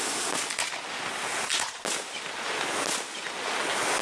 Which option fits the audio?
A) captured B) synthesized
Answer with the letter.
A